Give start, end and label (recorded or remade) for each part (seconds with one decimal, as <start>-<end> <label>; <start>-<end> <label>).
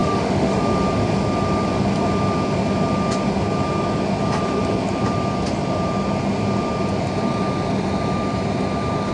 0.0-0.6 remade; 0.6-9.1 recorded